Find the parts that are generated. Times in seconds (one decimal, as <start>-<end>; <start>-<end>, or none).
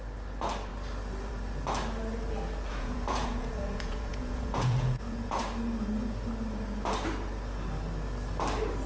2.7-5.4